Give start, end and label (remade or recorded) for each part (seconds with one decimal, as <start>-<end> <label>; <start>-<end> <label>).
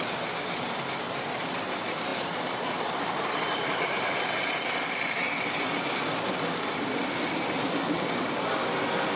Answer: 0.0-2.1 recorded; 2.1-4.2 remade; 4.2-9.2 recorded